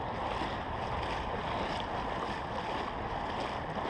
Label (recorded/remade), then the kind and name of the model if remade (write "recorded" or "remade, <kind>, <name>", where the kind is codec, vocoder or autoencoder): recorded